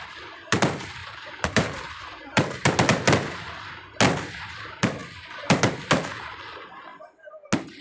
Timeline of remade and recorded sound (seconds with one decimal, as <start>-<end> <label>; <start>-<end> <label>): 0.0-1.0 recorded; 1.0-1.9 remade; 1.9-7.8 recorded